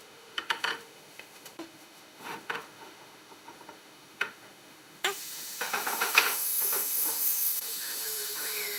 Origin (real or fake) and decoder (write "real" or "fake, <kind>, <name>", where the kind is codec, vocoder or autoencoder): fake, autoencoder, DAC-VAE